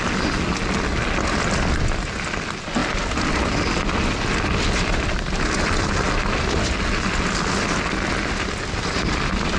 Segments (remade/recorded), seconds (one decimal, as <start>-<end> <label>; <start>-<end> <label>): 0.0-9.6 recorded